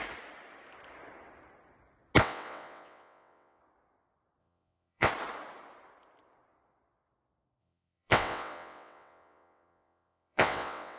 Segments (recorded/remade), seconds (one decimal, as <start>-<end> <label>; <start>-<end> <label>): 0.0-2.2 recorded; 2.2-3.6 remade; 3.6-4.4 recorded; 4.4-5.1 remade; 5.1-7.6 recorded; 7.6-11.0 remade